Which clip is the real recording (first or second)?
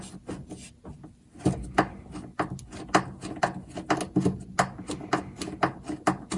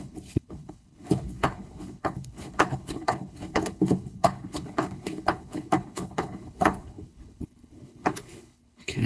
first